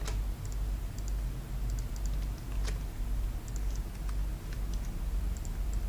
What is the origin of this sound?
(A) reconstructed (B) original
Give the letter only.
B